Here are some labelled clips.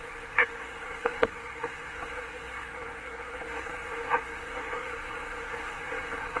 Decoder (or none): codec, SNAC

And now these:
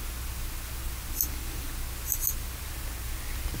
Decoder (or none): none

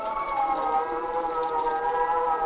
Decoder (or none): none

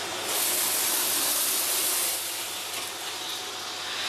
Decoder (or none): none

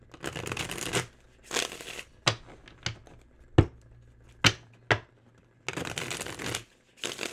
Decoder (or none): none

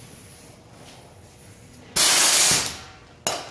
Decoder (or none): none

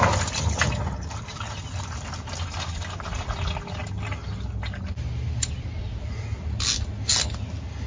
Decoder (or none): none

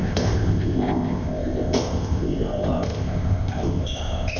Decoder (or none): codec, ZipCodec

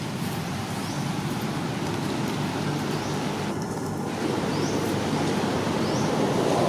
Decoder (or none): none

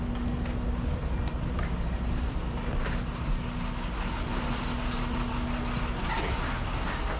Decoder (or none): none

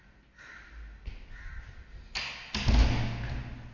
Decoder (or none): none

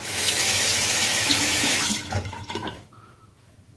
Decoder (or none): autoencoder, DAC-VAE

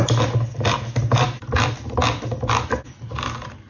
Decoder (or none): none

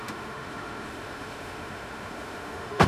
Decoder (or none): autoencoder, DAC-VAE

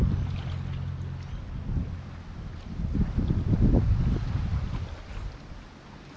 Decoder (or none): none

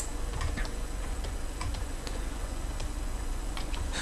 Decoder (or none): vocoder, Vocos